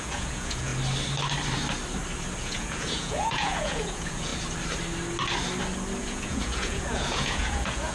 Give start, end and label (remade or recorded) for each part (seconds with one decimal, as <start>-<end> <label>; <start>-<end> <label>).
0.0-0.7 remade; 0.7-2.4 recorded; 2.4-4.3 remade; 4.3-6.0 recorded; 6.0-7.9 remade